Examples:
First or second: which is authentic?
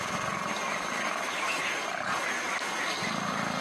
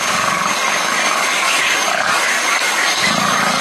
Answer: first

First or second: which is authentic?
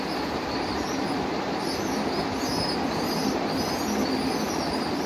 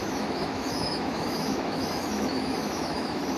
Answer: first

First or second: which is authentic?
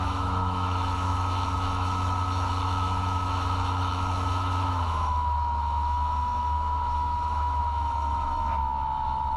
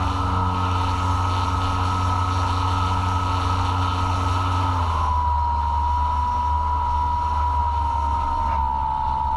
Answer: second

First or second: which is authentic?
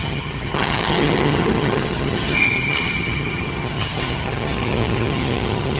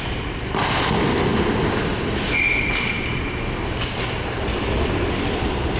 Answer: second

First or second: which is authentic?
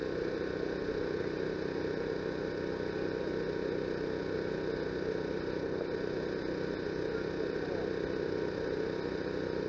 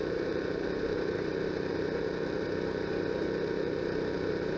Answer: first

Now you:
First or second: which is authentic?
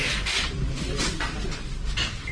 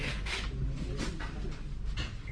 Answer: second